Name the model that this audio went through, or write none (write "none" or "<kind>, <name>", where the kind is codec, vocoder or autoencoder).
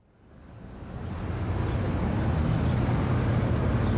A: none